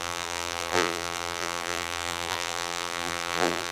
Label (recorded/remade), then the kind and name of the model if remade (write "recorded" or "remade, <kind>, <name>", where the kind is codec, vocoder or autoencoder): remade, vocoder, BigVGAN v2